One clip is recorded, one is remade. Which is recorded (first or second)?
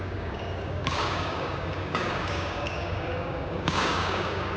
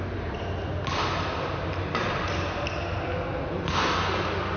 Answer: second